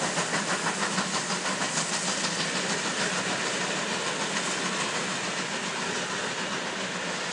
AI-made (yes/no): no